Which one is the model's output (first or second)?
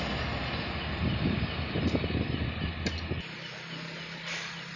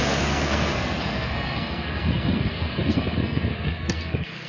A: second